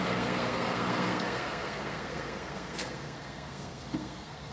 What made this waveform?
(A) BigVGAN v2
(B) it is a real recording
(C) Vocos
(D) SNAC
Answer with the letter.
D